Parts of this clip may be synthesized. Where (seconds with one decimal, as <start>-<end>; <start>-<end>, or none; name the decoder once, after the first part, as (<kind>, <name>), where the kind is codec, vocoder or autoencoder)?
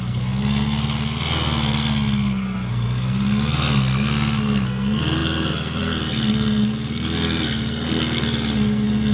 0.0-9.1 (codec, SNAC)